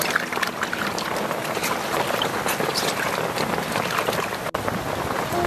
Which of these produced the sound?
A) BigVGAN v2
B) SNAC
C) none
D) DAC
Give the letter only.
C